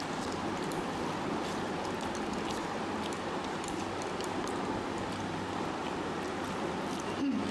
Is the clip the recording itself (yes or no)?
yes